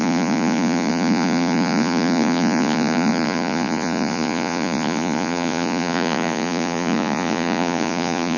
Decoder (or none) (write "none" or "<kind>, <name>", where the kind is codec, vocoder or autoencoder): vocoder, Vocos